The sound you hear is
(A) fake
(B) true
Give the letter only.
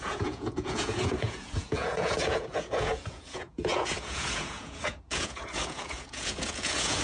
A